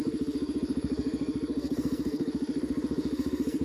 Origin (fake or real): fake